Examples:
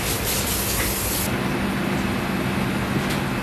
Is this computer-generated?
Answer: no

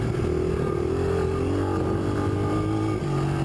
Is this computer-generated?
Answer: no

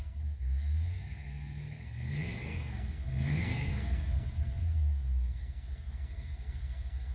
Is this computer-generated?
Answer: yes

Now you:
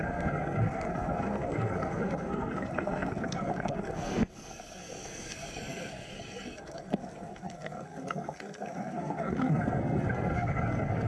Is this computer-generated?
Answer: yes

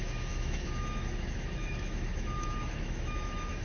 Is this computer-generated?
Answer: yes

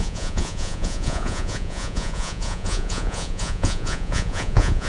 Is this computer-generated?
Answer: yes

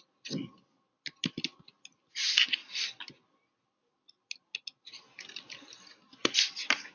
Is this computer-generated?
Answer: no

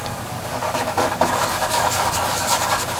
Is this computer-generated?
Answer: yes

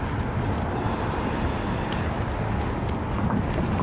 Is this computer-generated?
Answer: no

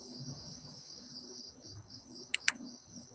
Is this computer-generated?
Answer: yes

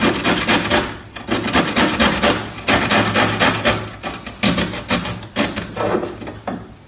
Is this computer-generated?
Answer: no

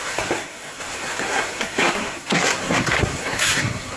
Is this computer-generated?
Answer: yes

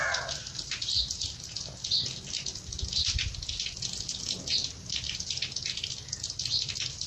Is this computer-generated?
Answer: no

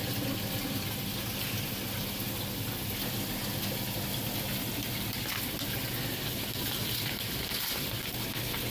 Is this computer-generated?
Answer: no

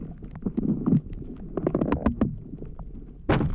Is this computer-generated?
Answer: no